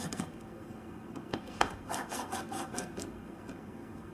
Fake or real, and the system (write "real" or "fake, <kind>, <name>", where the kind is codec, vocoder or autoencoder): fake, codec, SNAC